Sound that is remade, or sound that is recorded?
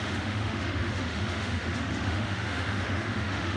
remade